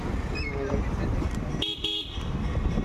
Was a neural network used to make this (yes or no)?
no